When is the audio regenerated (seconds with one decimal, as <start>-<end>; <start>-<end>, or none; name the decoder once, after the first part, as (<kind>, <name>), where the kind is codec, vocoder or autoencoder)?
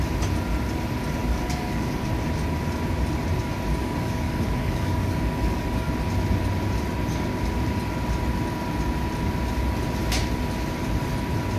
1.2-2.1 (codec, DAC); 3.8-5.9